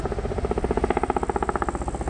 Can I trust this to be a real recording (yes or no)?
yes